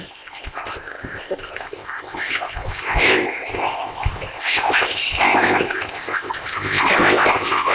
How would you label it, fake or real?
fake